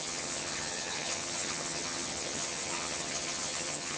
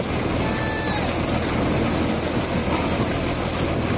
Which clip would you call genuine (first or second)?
second